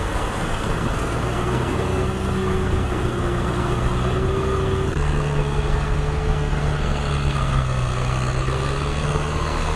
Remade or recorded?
remade